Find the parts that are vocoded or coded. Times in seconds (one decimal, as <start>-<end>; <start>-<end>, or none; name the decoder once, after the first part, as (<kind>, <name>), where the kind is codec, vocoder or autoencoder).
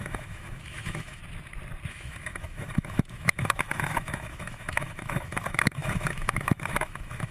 0.0-1.2 (autoencoder, DAC-VAE); 1.9-7.3